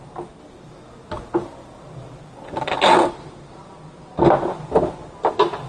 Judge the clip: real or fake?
real